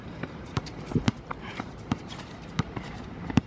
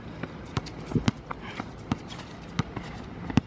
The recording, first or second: second